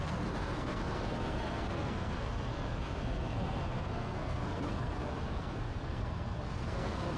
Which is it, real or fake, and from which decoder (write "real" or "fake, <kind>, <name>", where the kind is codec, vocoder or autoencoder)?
fake, codec, SNAC